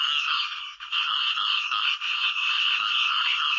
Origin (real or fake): fake